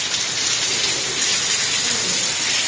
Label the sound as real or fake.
real